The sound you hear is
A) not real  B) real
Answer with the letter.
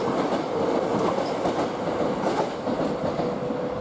B